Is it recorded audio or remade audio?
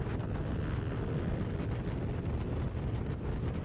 recorded